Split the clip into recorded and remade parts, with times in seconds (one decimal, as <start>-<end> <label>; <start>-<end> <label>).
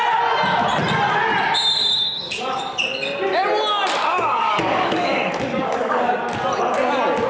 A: 0.0-1.9 recorded; 1.9-2.6 remade; 2.6-4.1 recorded; 4.1-6.1 remade; 6.1-7.3 recorded